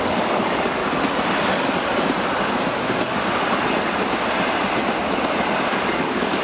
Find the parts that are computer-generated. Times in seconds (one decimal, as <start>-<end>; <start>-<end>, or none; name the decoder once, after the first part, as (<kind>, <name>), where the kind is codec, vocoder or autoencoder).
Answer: 0.0-0.8 (codec, DAC); 1.4-1.9; 5.7-6.4

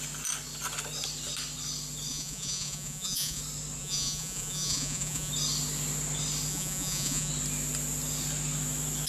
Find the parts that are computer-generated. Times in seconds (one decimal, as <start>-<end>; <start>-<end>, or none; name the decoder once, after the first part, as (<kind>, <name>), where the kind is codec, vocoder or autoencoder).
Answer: 2.1-3.4 (vocoder, Vocos); 3.8-5.3; 6.5-7.3

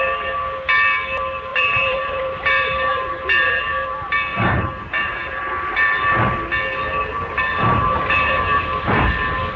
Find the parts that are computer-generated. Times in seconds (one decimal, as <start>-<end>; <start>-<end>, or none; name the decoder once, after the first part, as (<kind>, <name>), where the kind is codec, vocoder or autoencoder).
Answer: 1.5-3.6 (vocoder, BigVGAN v2); 4.3-5.4; 7.5-9.1

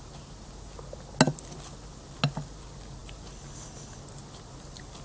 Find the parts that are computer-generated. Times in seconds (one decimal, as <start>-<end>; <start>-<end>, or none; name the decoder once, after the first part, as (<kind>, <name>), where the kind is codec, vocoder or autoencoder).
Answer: none